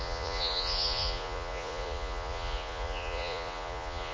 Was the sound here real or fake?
fake